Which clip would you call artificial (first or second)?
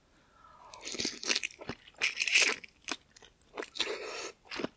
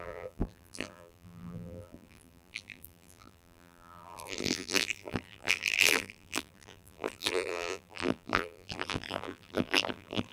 second